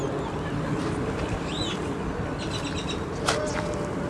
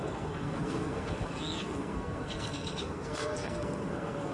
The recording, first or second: first